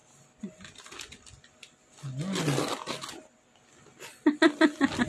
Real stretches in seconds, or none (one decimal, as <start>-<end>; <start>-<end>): 0.0-5.1